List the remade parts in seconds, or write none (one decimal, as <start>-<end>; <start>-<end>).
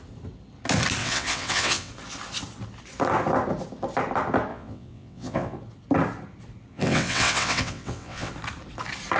1.0-1.9; 4.5-5.6; 6.7-8.3